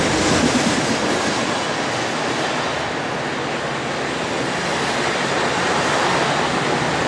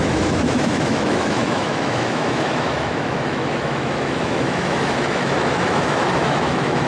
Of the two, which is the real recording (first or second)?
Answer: first